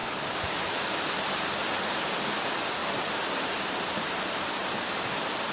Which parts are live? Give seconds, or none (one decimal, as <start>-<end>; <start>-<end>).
0.8-5.5